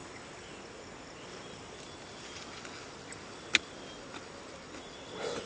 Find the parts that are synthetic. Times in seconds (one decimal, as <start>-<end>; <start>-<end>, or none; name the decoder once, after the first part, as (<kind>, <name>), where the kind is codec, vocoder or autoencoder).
none

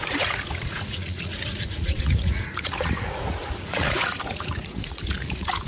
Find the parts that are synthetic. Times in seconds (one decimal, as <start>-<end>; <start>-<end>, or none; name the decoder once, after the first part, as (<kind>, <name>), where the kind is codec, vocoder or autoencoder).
0.0-5.7 (vocoder, Vocos)

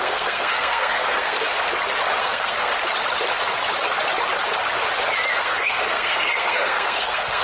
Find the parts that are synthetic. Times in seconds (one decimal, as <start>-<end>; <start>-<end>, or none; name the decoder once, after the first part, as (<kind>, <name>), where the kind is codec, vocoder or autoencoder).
0.0-1.5 (codec, SNAC); 2.2-2.7; 5.4-7.4

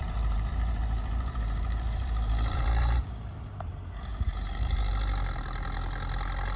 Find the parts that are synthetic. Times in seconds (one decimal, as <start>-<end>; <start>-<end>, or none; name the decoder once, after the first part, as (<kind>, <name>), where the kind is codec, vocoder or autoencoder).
0.0-3.0 (vocoder, BigVGAN v2); 4.1-4.9

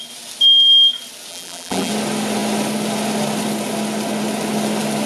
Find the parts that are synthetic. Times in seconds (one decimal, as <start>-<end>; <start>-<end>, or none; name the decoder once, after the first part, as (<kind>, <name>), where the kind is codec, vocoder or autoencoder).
1.3-1.9 (vocoder, BigVGAN v2)